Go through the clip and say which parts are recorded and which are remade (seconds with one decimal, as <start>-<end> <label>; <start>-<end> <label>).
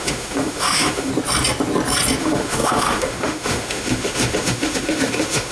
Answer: 0.0-1.1 remade; 1.1-2.2 recorded; 2.2-5.5 remade